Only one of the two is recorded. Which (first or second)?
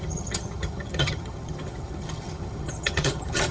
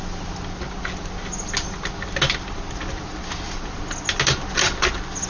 second